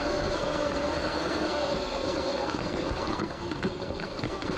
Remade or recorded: remade